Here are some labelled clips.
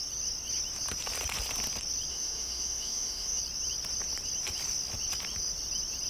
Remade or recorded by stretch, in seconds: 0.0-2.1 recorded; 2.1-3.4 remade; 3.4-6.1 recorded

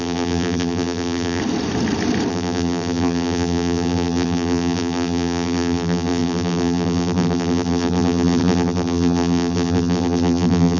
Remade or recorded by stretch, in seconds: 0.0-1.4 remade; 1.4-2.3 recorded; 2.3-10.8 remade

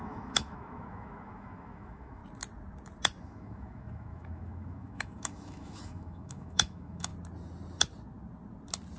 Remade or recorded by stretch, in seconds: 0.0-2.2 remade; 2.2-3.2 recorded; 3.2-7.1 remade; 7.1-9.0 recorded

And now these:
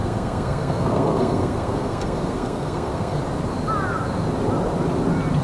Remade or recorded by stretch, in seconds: 0.0-3.2 remade; 3.2-5.4 recorded

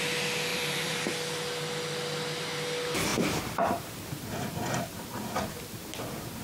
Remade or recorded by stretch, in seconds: 0.0-0.5 recorded; 0.5-1.1 remade; 1.1-3.1 recorded; 3.1-4.1 remade; 4.1-6.4 recorded

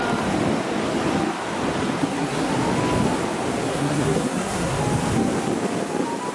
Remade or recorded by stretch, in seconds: 0.0-2.0 recorded; 2.0-2.5 remade; 2.5-3.7 recorded; 3.7-4.8 remade; 4.8-6.3 recorded

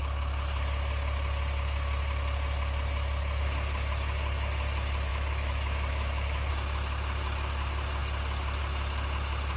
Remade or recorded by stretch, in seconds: 0.0-5.1 recorded; 5.1-6.5 remade; 6.5-9.6 recorded

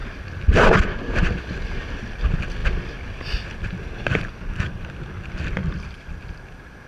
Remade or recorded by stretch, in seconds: 0.0-5.6 recorded; 5.6-6.1 remade; 6.1-6.9 recorded